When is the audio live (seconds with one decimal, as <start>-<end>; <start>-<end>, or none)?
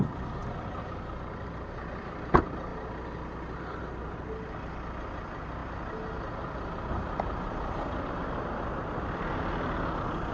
0.0-10.3